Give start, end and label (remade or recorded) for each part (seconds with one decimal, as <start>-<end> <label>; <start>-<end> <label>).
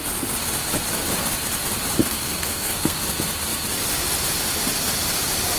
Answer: 0.0-2.0 recorded; 2.0-3.0 remade; 3.0-5.6 recorded